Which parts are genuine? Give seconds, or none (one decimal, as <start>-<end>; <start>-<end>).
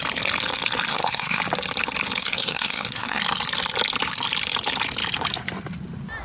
0.0-0.9; 1.4-2.2; 3.2-6.2